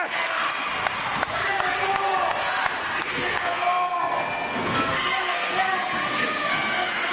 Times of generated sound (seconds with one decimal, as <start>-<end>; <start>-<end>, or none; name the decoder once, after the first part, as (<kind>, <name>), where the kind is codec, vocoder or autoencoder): 2.8-7.1 (codec, SNAC)